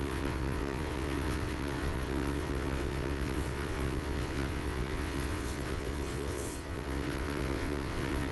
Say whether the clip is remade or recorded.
remade